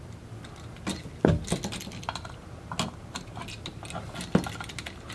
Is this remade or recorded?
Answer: recorded